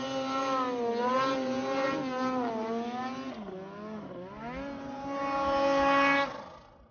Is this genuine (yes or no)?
yes